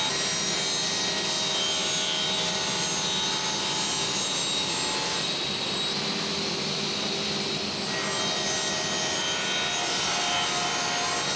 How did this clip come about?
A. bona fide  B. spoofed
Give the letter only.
A